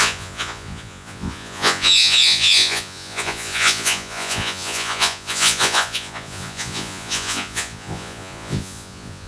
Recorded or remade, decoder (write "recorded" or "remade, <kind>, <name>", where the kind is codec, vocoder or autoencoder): remade, vocoder, Vocos